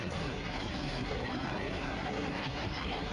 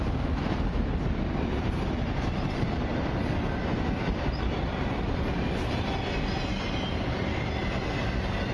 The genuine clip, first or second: second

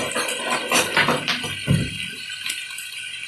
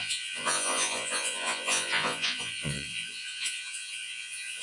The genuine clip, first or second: first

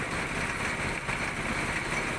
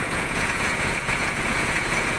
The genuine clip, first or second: first